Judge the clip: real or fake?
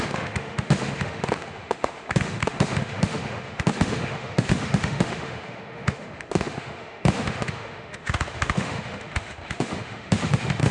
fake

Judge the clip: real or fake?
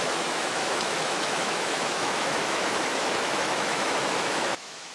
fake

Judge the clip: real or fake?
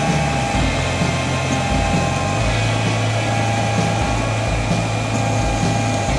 real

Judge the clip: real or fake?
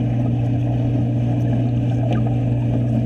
real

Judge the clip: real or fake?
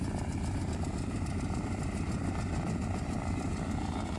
real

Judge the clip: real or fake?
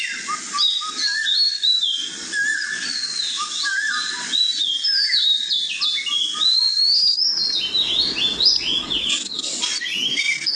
real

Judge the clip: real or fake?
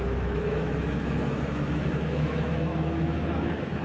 fake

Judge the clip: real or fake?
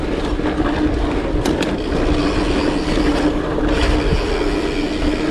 real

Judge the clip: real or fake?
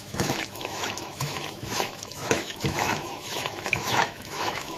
fake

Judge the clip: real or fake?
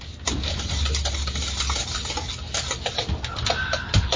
real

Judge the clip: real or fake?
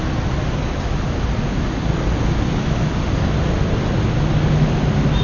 real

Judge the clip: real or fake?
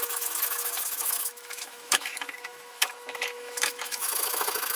fake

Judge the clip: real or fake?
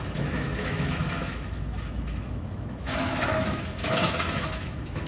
fake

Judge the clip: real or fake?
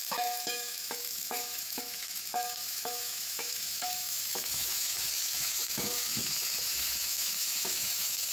fake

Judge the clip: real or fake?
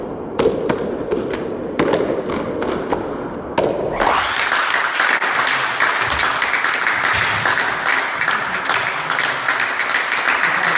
real